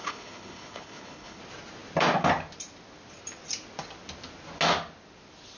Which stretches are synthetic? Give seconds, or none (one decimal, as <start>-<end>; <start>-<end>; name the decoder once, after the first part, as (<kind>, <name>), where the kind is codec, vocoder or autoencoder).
0.0-1.4 (codec, HILCodec)